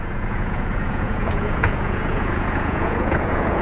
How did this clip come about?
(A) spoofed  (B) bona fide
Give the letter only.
A